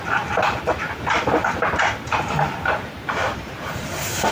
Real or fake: real